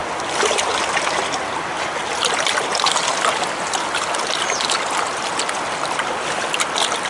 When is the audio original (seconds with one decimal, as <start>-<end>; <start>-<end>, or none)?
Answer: 0.0-7.1